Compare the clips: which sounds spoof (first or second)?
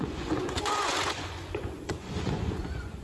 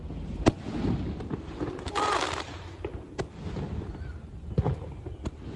first